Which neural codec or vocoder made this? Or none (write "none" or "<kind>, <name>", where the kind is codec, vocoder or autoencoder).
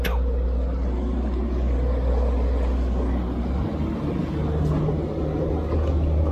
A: none